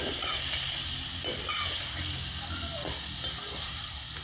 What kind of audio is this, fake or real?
real